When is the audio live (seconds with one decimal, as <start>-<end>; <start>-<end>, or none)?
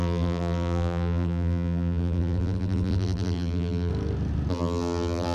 3.9-4.5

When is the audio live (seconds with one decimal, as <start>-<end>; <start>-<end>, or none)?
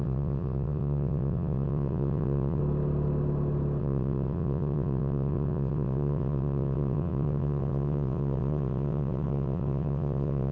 2.6-3.8